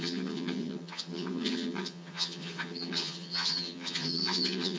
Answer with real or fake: fake